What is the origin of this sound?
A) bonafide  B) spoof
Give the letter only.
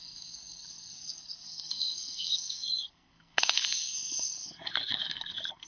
B